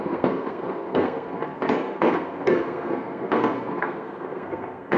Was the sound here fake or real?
fake